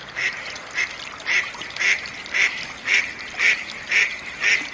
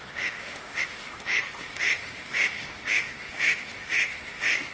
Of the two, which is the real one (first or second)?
first